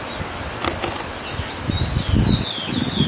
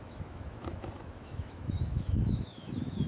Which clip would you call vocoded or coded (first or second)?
second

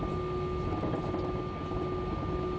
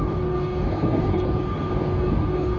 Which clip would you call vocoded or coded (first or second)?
second